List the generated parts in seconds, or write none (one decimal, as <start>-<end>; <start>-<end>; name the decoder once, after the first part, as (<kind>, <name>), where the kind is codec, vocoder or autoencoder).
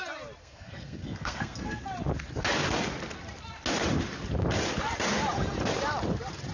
0.4-1.9 (codec, SNAC)